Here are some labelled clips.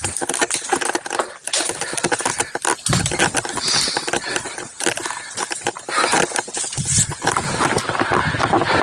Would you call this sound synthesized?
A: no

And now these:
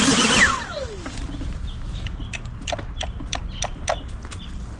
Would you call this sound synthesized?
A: no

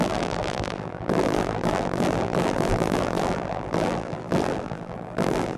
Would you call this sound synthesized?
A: yes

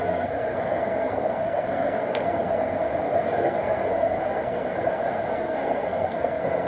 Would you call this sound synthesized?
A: yes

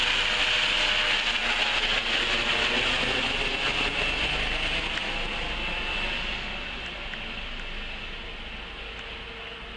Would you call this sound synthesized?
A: no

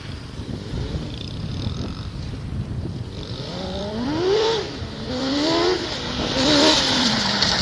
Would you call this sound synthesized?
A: yes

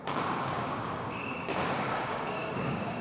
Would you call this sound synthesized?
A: yes